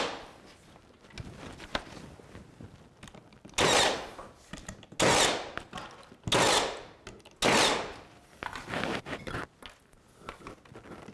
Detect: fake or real real